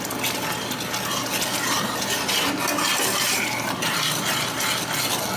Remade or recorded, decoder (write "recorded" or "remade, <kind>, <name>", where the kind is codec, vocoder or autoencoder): recorded